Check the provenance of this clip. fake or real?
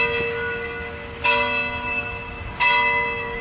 real